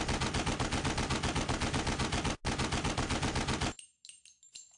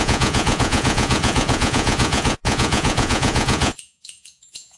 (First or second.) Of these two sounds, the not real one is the second